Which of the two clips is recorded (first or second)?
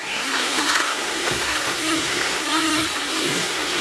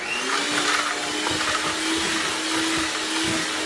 second